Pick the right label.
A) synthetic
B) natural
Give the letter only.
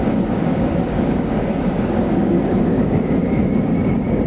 A